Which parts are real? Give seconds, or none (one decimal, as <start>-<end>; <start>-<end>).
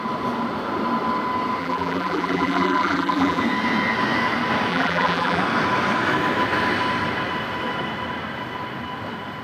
0.0-1.6; 3.4-4.7; 5.4-9.4